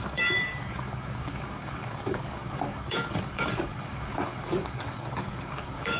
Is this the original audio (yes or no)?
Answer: no